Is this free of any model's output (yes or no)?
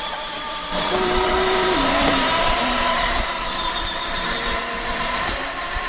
no